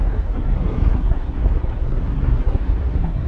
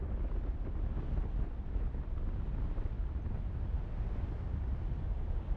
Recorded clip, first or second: second